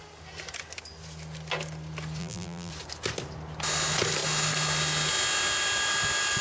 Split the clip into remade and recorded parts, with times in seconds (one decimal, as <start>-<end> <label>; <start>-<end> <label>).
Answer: 0.0-2.2 recorded; 2.2-2.7 remade; 2.7-6.4 recorded